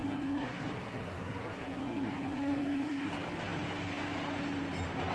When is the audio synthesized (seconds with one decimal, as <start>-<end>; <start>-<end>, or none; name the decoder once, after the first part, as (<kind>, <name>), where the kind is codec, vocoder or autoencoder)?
0.0-3.1 (codec, SNAC)